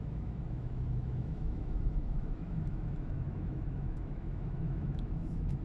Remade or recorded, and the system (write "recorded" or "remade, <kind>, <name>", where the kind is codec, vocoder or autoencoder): remade, autoencoder, DAC-VAE